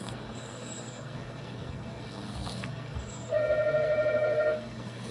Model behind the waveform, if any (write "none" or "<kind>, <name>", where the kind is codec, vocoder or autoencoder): codec, SNAC